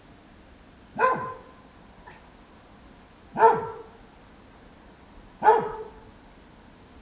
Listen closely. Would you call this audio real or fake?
real